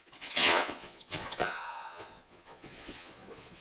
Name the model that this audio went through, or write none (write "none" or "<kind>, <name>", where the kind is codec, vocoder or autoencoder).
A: vocoder, Vocos